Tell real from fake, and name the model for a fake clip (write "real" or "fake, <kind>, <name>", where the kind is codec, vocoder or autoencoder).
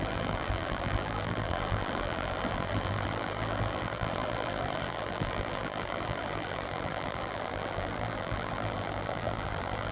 fake, vocoder, BigVGAN v2